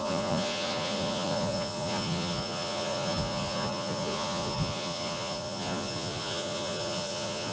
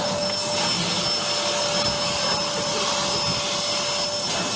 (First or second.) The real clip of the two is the second